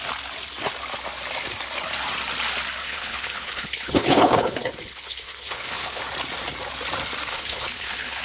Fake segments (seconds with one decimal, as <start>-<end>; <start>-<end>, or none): 2.8-6.0; 7.3-8.2